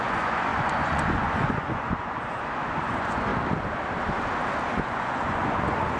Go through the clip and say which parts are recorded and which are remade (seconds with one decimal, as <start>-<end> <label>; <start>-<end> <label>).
0.0-3.3 remade; 3.3-4.8 recorded; 4.8-6.0 remade